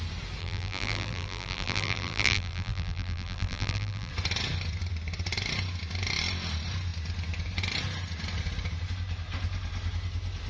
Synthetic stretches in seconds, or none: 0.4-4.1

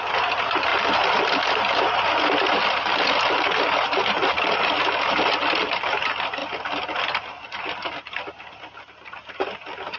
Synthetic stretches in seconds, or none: 0.0-6.4; 7.3-10.0

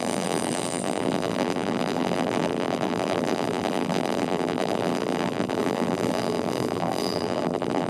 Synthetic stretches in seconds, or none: 0.0-7.9

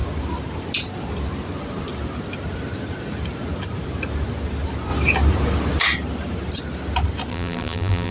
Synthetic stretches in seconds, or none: 7.3-8.1